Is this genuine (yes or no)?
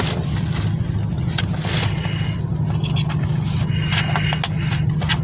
yes